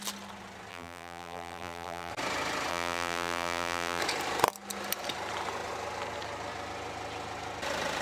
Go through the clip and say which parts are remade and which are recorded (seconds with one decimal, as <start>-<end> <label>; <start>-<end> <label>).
0.0-0.7 recorded; 0.7-2.1 remade; 2.1-2.7 recorded; 2.7-4.0 remade; 4.0-8.0 recorded